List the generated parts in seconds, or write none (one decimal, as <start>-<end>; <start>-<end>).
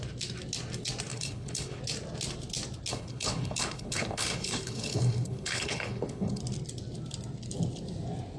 1.1-1.8; 2.9-6.4